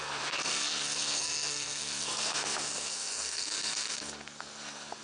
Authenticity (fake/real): fake